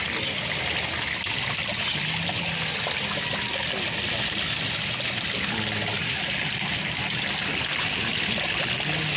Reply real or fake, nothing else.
real